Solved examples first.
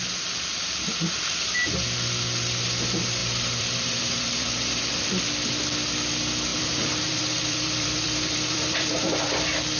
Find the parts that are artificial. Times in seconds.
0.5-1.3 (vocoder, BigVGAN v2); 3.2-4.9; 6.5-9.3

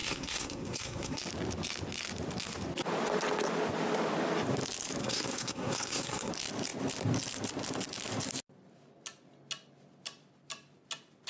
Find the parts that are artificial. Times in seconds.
0.0-1.2 (codec, SNAC); 5.0-6.3

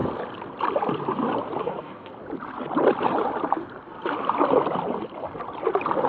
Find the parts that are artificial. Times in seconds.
1.6-2.1 (codec, SNAC)